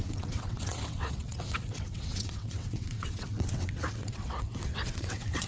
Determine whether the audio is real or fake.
fake